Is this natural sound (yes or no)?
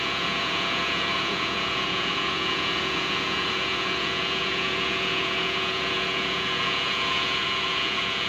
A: no